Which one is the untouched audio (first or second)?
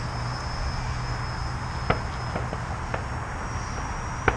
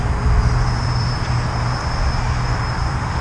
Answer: first